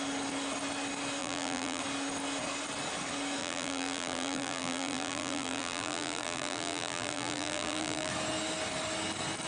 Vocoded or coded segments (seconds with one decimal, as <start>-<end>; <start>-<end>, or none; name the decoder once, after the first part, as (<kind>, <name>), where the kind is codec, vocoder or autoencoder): 1.2-1.8 (vocoder, BigVGAN v2); 3.4-8.1